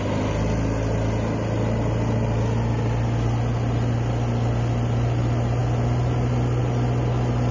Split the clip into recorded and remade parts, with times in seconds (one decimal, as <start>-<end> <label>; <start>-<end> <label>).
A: 0.0-7.5 recorded